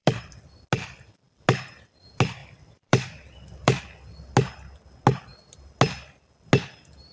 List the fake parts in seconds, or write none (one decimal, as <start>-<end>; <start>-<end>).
0.0-0.6; 2.4-3.8